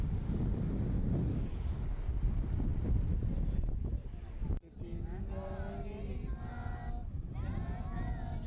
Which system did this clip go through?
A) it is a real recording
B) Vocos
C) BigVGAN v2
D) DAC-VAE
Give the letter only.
A